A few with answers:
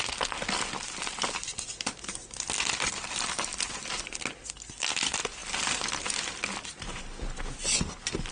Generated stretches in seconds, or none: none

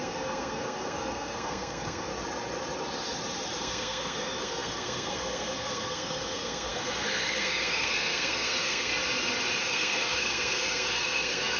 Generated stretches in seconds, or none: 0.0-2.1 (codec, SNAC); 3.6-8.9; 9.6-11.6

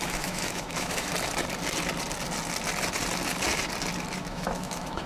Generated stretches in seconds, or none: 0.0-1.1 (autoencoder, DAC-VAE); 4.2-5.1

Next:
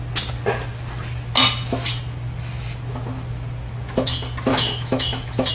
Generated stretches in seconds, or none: 4.5-5.5 (autoencoder, DAC-VAE)

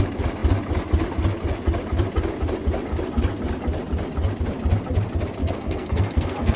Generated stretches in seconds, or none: 5.4-6.6 (codec, SNAC)